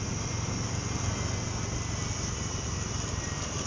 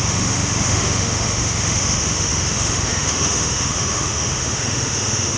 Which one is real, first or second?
first